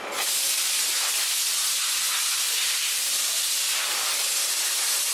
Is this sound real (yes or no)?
yes